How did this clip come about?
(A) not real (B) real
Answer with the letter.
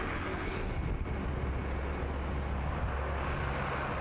B